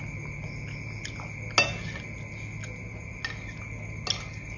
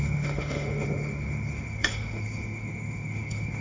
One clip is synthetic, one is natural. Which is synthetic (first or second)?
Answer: second